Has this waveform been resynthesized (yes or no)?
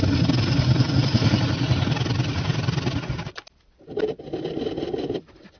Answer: no